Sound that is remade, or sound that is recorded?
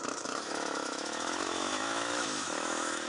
remade